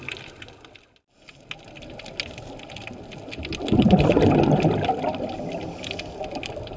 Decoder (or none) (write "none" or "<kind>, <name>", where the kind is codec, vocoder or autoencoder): none